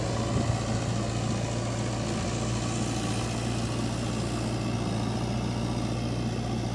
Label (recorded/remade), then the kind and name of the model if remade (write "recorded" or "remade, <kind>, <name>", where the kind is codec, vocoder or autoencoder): recorded